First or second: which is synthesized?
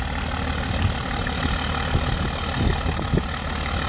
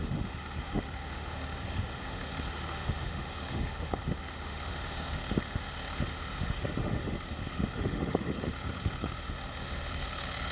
second